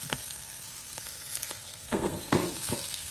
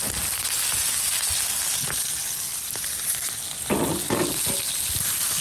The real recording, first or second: second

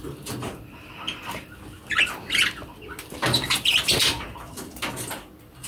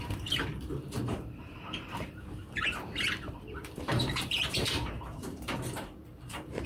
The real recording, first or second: first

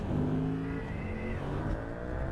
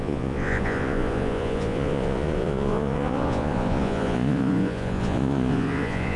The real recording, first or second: first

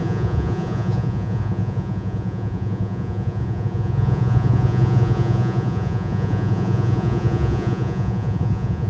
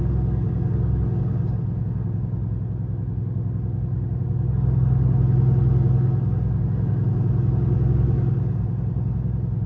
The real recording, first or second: second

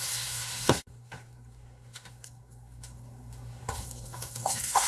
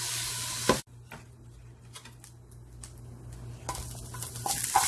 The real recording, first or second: second